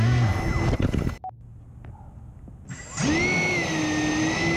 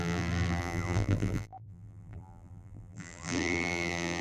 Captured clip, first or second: first